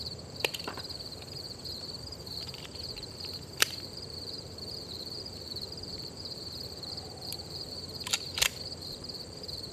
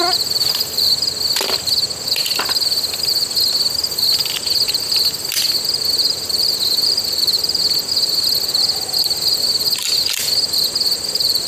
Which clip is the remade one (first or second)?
first